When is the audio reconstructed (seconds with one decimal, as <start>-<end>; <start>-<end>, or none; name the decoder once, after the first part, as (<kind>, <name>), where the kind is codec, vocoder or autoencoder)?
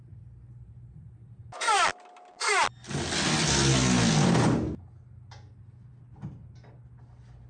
none